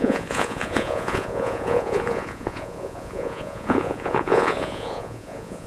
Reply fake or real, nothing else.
fake